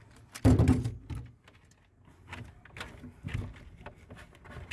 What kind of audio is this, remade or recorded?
recorded